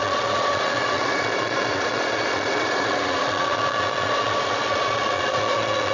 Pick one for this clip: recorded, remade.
remade